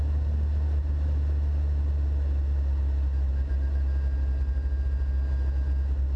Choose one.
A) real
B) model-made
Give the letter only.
A